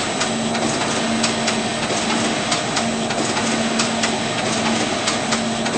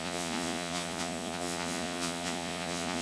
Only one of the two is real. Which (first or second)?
first